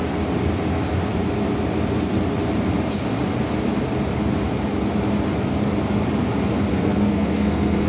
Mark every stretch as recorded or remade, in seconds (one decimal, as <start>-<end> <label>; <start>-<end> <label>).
0.0-6.7 recorded; 6.7-7.9 remade

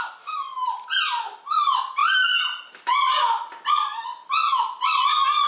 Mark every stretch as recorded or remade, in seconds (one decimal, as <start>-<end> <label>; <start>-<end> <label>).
0.0-2.0 recorded; 2.0-2.7 remade; 2.7-3.5 recorded; 3.5-4.0 remade; 4.0-5.5 recorded

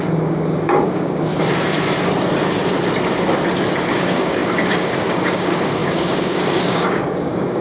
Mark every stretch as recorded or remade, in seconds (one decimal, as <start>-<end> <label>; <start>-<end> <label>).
0.0-1.3 remade; 1.3-3.9 recorded; 3.9-7.6 remade

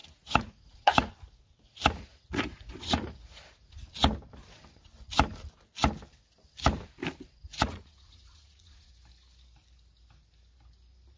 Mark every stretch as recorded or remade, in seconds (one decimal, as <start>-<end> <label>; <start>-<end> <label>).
0.0-1.1 remade; 1.1-2.1 recorded; 2.1-3.7 remade; 3.7-7.5 recorded; 7.5-8.9 remade; 8.9-11.2 recorded

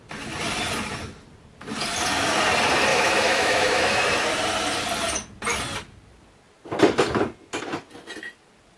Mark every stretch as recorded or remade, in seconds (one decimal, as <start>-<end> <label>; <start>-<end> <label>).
0.0-2.9 recorded; 2.9-3.8 remade; 3.8-8.8 recorded